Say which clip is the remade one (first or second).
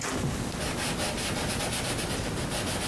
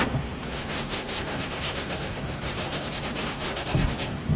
second